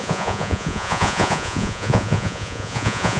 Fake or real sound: fake